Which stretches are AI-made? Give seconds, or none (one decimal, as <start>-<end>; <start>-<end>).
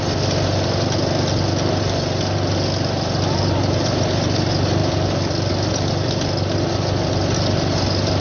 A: none